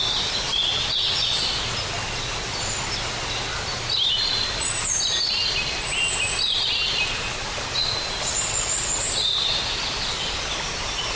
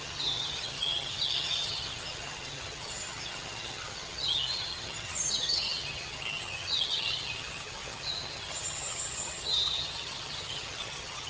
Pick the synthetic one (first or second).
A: second